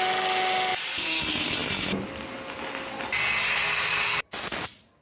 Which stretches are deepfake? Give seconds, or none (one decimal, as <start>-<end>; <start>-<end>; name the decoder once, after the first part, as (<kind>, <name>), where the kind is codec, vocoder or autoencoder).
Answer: 0.7-1.2 (vocoder, BigVGAN v2)